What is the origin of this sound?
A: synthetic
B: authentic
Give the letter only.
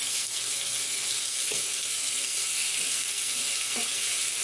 A